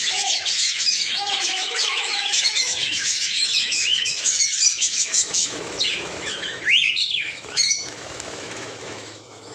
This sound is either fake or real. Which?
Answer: fake